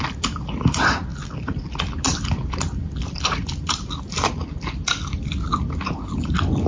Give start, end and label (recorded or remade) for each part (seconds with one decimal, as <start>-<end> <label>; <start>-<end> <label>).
0.0-6.7 recorded